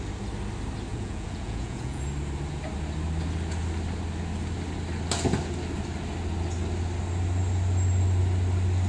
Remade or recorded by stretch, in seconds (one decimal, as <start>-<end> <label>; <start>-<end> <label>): 0.0-0.9 recorded; 0.9-2.0 remade; 2.0-8.9 recorded